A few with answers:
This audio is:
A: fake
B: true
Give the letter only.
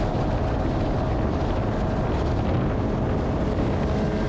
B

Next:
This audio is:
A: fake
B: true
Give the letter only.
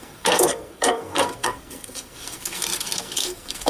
A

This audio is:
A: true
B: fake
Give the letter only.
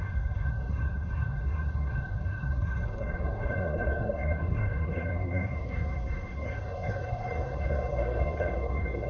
B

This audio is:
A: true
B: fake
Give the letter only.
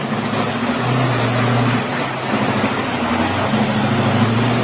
A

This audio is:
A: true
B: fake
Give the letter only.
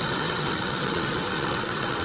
B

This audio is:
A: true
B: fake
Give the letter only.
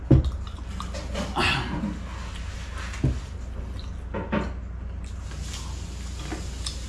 A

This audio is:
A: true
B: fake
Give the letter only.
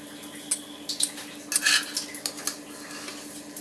A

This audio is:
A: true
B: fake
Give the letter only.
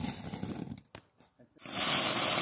A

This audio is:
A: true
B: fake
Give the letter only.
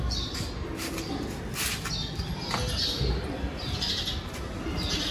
A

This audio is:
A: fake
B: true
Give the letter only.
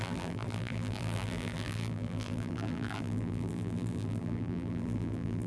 A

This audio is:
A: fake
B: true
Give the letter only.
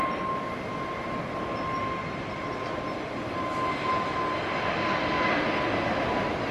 B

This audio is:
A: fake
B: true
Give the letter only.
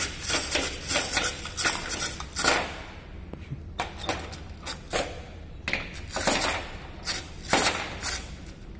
B